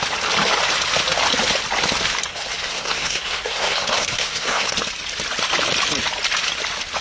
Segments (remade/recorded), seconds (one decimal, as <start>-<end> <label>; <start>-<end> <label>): 0.0-2.3 recorded; 2.3-4.7 remade; 4.7-7.0 recorded